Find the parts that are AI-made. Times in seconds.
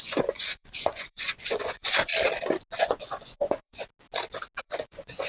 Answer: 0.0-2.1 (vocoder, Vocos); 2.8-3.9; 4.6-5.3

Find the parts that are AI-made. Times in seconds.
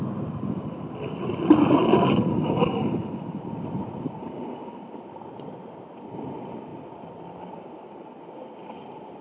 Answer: 1.8-4.5 (vocoder, BigVGAN v2); 6.7-8.0